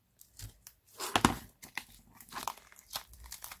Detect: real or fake real